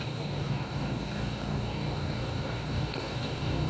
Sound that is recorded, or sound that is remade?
remade